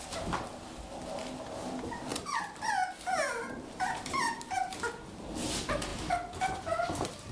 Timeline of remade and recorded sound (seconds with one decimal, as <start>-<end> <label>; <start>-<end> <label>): 0.0-2.1 recorded; 2.1-4.7 remade; 4.7-5.9 recorded; 5.9-7.3 remade